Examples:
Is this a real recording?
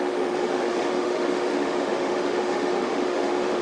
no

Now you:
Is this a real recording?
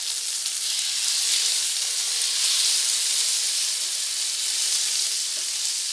yes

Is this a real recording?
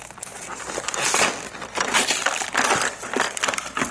yes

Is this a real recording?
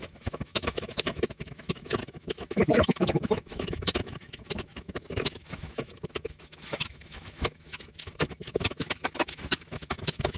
no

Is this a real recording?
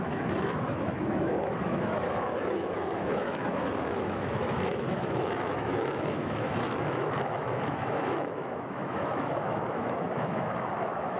no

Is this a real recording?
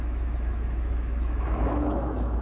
no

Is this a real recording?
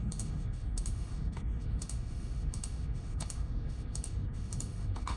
no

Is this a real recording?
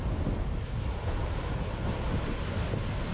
yes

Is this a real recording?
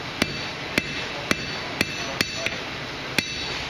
yes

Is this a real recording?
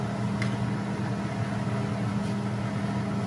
yes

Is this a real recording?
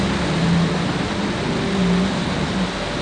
yes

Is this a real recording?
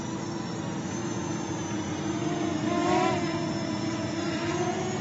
yes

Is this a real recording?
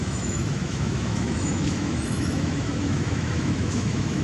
no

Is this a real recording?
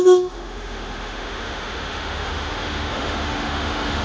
no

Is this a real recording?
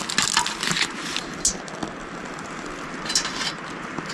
yes